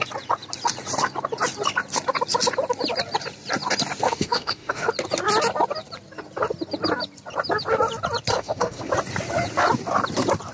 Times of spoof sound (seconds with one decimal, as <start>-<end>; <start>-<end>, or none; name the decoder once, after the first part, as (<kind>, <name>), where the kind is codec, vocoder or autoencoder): 4.0-4.9 (autoencoder, DAC-VAE); 8.3-8.9